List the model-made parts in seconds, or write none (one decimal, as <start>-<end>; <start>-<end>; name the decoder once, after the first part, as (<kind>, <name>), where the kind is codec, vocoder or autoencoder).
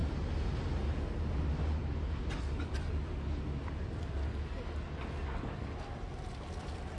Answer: none